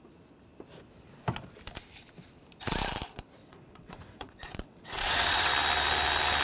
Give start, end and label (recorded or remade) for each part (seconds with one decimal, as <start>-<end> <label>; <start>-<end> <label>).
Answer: 0.0-3.4 recorded; 3.4-5.5 remade; 5.5-6.4 recorded